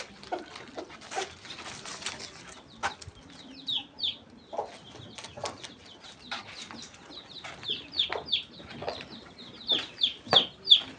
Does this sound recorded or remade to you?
recorded